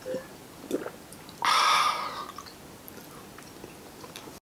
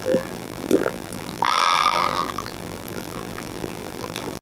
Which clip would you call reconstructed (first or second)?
second